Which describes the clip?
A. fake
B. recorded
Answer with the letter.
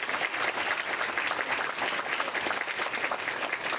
B